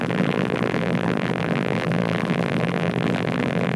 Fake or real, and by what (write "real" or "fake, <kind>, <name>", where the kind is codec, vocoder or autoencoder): fake, vocoder, BigVGAN v2